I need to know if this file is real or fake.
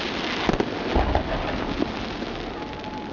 real